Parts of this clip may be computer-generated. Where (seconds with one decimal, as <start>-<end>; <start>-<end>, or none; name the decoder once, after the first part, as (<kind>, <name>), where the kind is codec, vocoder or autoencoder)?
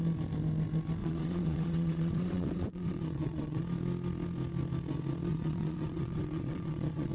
1.0-3.6 (vocoder, WaveNeXt); 5.3-7.1